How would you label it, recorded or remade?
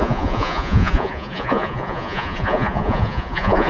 remade